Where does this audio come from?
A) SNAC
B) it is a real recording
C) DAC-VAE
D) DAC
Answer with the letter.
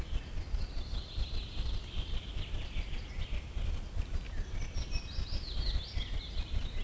B